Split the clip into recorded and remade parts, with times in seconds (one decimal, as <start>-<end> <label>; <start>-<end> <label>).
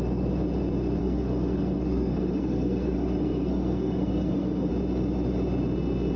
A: 0.0-1.0 recorded; 1.0-4.7 remade; 4.7-6.2 recorded